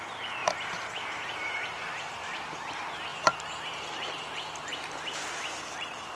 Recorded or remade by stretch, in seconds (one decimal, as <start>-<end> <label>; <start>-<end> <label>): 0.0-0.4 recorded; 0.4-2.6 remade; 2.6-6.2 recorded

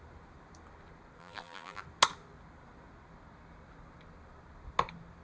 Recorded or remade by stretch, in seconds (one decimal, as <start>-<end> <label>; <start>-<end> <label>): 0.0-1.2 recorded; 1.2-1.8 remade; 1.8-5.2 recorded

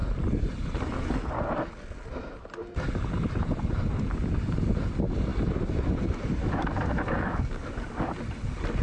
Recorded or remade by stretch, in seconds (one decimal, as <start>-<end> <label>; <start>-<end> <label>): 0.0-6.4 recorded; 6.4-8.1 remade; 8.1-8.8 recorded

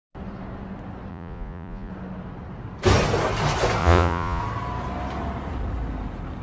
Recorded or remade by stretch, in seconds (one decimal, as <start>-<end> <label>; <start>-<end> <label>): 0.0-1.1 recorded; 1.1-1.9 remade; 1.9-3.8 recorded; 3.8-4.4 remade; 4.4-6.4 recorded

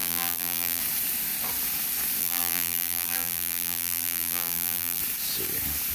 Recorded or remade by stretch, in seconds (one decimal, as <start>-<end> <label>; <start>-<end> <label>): 0.0-0.8 remade; 0.8-2.2 recorded; 2.2-5.0 remade; 5.0-5.9 recorded

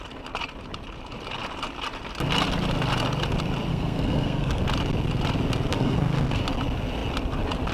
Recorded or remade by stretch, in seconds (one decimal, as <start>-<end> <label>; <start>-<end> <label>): 0.0-3.7 recorded; 3.7-4.6 remade; 4.6-5.7 recorded; 5.7-6.4 remade; 6.4-7.7 recorded

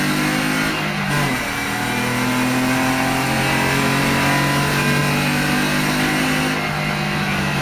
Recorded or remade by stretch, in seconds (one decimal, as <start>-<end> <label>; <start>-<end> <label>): 0.0-7.6 recorded

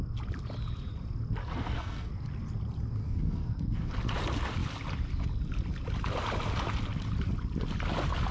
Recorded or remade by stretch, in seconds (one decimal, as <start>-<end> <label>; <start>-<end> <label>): 0.0-1.4 recorded; 1.4-2.1 remade; 2.1-3.0 recorded; 3.0-3.9 remade; 3.9-8.3 recorded